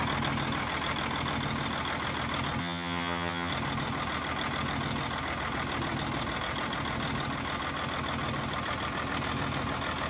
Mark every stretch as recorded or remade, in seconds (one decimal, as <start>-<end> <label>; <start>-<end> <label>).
0.0-2.6 recorded; 2.6-3.5 remade; 3.5-10.1 recorded